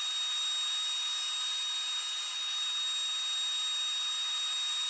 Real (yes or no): yes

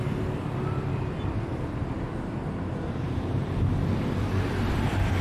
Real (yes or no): no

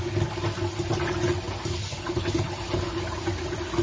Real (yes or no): yes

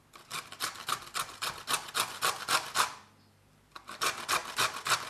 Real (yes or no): yes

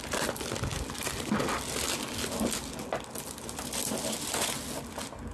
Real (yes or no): yes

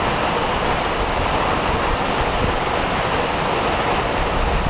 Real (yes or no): yes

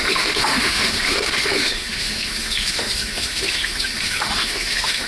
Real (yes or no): no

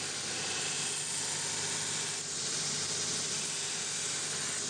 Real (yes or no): yes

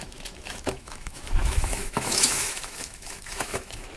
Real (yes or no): no